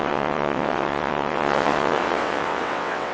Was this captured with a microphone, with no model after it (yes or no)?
no